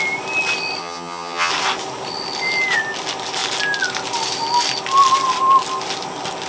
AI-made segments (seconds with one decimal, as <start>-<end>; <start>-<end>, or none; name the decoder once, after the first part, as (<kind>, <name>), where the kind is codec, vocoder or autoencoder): 0.8-1.5 (vocoder, HiFi-GAN)